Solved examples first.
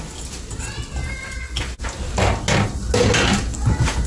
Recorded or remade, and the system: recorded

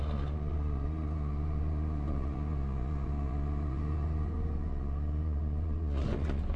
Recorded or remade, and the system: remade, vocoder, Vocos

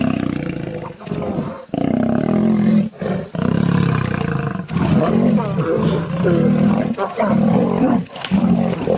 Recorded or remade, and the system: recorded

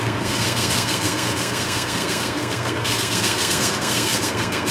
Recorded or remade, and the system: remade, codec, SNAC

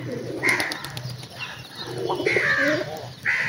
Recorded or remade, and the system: recorded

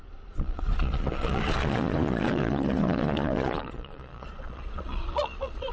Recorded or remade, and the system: remade, vocoder, Vocos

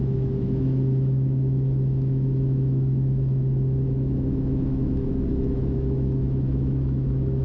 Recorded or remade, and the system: remade, autoencoder, DAC-VAE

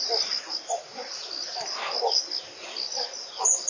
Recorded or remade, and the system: recorded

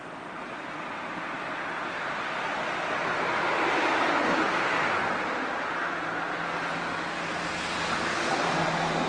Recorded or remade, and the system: recorded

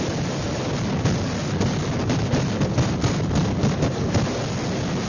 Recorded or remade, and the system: recorded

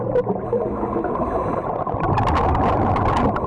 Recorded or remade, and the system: recorded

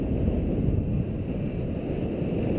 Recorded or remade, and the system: recorded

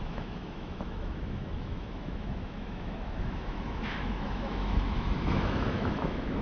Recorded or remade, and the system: remade, autoencoder, DAC-VAE